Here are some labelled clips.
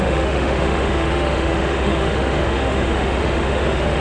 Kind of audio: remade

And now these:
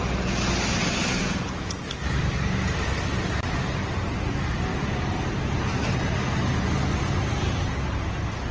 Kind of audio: recorded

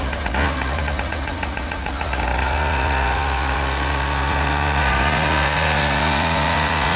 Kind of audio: remade